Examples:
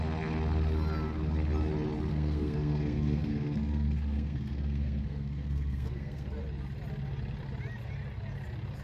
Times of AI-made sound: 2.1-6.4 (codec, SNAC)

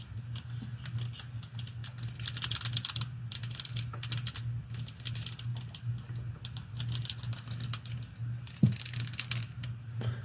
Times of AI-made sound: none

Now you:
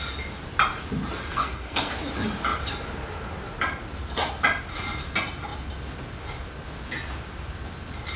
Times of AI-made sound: 1.3-1.9 (codec, SNAC)

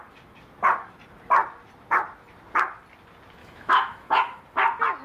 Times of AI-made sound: 3.4-4.4 (autoencoder, DAC-VAE)